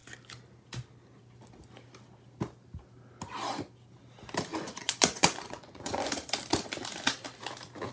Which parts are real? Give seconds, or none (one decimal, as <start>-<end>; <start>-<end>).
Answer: 0.0-4.5; 6.1-7.9